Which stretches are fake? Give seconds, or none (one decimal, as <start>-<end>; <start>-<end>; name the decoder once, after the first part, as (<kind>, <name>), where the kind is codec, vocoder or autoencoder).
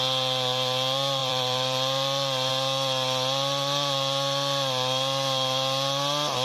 1.2-2.5 (vocoder, BigVGAN v2)